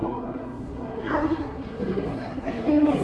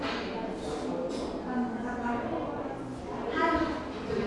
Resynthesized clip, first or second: first